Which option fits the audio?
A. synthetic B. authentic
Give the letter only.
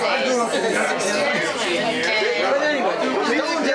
B